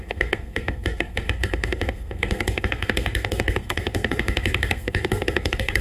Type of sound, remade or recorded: remade